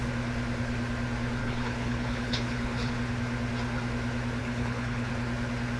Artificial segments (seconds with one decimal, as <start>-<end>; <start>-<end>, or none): 1.4-2.9; 4.4-5.1